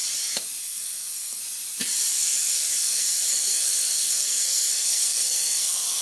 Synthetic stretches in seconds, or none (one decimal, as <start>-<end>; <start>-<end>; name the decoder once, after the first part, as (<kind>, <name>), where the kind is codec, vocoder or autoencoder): 0.6-1.4 (codec, SNAC); 2.1-6.0